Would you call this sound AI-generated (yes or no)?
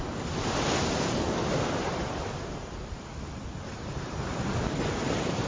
no